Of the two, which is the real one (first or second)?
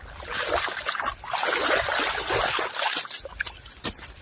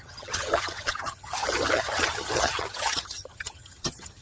first